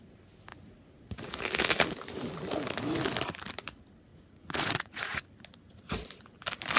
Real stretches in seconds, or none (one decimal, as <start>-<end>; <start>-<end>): 0.0-0.5; 1.4-4.1; 5.2-6.8